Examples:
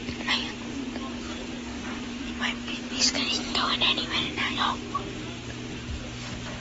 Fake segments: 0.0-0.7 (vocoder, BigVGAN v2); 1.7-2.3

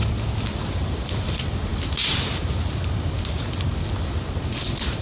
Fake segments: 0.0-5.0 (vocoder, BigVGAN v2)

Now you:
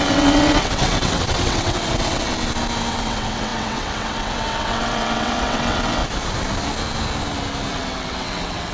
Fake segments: 0.0-2.3 (vocoder, WaveNeXt); 2.9-6.0; 7.7-8.7

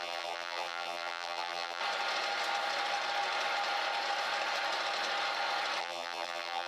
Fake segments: 0.0-1.8 (vocoder, BigVGAN v2); 5.8-6.7

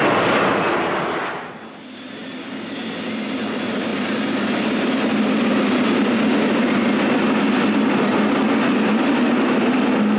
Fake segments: 3.9-6.2 (vocoder, BigVGAN v2)